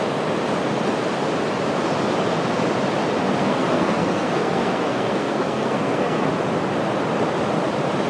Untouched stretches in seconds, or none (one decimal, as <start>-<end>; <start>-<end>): 0.0-3.2; 6.3-8.1